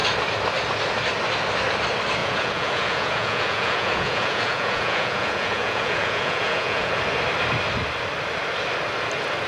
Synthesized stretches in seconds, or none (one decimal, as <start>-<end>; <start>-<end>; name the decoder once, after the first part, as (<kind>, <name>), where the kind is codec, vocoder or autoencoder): 2.2-7.0 (vocoder, Vocos)